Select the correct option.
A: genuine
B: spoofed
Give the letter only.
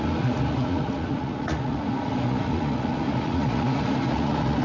B